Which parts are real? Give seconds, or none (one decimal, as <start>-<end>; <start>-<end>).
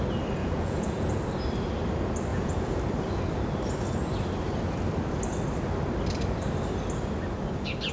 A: 0.0-0.4; 1.2-2.3; 2.8-7.9